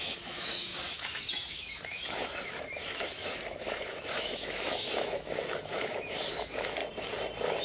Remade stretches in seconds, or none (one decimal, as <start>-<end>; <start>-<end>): 0.0-6.8